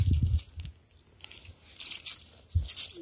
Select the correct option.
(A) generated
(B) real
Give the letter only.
B